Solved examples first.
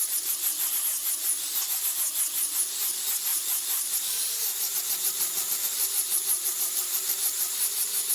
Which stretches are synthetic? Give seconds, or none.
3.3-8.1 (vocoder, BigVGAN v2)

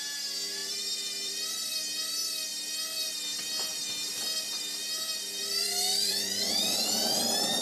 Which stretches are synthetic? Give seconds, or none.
0.6-1.8 (vocoder, BigVGAN v2); 3.7-6.6

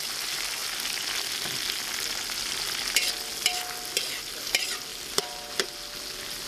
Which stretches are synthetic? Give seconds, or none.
4.9-5.5 (vocoder, BigVGAN v2)

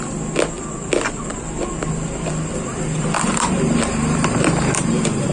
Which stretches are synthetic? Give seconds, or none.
2.7-5.3 (vocoder, BigVGAN v2)

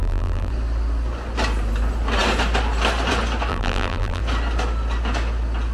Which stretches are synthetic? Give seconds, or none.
0.0-0.5 (vocoder, BigVGAN v2); 3.5-4.2

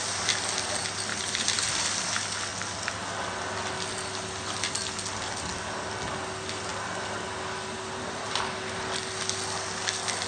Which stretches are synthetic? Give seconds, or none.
1.1-2.1 (vocoder, BigVGAN v2); 6.7-7.2

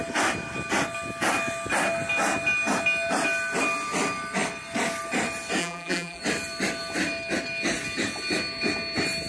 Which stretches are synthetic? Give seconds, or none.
5.6-6.2 (vocoder, BigVGAN v2)